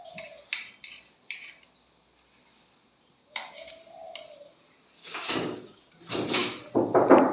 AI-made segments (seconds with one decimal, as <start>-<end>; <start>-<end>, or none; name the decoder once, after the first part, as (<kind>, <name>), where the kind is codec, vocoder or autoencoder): 5.0-5.9 (codec, DAC)